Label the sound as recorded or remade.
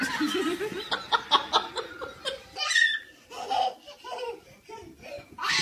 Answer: recorded